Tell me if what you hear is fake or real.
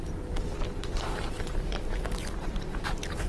fake